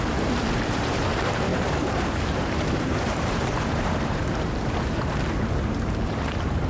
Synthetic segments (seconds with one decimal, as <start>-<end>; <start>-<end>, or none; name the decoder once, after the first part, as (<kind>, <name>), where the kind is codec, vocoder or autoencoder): 0.0-6.7 (vocoder, BigVGAN v2)